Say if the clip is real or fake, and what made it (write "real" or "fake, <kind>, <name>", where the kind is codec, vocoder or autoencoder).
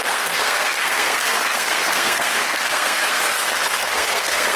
fake, codec, SNAC